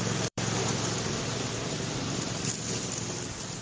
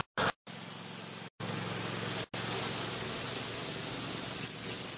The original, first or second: second